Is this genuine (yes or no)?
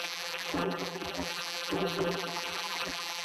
no